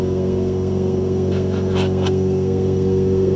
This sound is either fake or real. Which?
fake